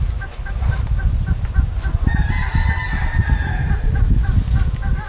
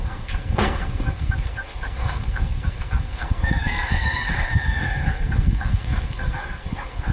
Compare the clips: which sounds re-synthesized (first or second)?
second